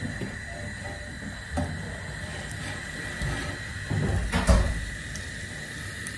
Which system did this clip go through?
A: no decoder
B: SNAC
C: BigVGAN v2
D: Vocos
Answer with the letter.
A